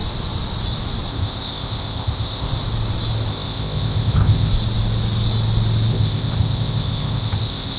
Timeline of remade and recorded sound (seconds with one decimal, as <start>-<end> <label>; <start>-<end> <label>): 0.0-1.1 recorded; 1.1-2.5 remade; 2.5-3.3 recorded; 3.3-4.5 remade; 4.5-5.9 recorded; 5.9-7.8 remade

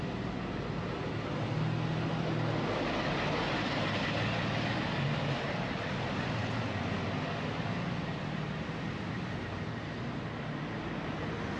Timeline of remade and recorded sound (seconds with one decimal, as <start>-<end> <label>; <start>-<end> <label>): 0.0-11.6 recorded

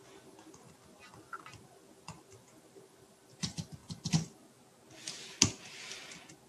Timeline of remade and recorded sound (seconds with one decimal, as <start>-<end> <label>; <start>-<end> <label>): 0.0-3.8 remade; 3.8-6.5 recorded

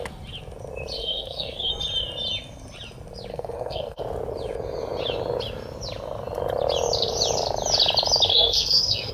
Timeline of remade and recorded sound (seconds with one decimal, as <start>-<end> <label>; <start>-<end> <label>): 0.0-1.0 recorded; 1.0-1.7 remade; 1.7-3.3 recorded; 3.3-4.0 remade; 4.0-8.3 recorded; 8.3-9.1 remade

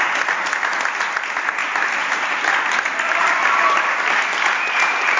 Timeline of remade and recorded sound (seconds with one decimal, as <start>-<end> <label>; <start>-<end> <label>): 0.0-5.2 recorded